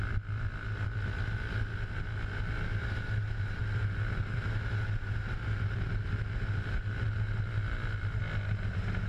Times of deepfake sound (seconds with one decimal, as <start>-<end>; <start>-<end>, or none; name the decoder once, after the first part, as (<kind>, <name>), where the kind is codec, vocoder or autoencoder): none